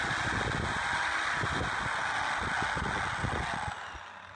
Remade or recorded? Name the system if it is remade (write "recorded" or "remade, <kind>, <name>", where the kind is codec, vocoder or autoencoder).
recorded